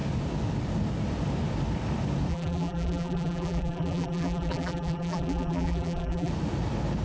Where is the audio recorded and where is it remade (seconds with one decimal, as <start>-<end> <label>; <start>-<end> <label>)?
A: 0.0-2.3 recorded; 2.3-6.3 remade; 6.3-7.0 recorded